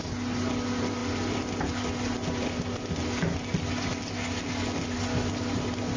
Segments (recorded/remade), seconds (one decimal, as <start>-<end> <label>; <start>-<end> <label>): 0.0-6.0 recorded